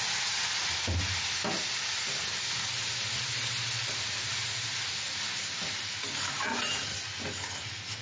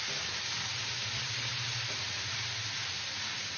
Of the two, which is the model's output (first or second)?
second